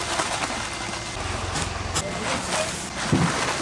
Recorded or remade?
recorded